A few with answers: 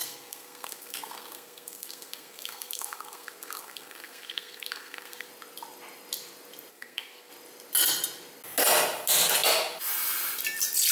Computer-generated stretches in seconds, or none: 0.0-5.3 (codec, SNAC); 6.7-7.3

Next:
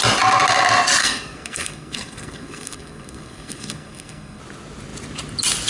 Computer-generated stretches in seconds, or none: 1.0-4.4 (codec, SNAC)

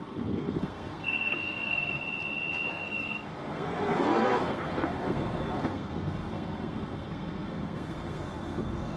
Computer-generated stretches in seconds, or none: 0.0-2.0 (codec, SNAC); 2.7-9.0

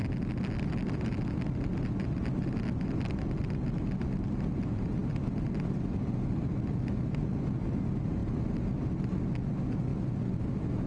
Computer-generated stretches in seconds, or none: none

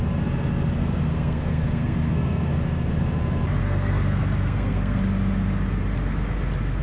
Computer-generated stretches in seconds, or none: 0.8-2.9 (codec, SNAC); 3.6-5.0